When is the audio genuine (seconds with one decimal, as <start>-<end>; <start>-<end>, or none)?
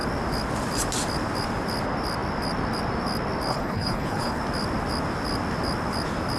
0.0-3.5; 4.4-6.4